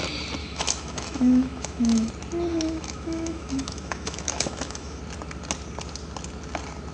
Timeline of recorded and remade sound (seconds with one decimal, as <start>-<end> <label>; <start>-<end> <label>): 0.0-0.4 recorded; 0.4-2.1 remade; 2.1-2.5 recorded; 2.5-5.0 remade; 5.0-6.9 recorded